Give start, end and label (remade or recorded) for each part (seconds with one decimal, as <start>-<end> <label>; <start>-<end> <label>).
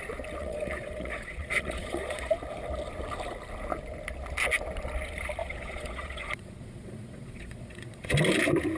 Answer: 0.0-0.4 recorded; 0.4-2.3 remade; 2.3-5.4 recorded; 5.4-8.1 remade; 8.1-8.8 recorded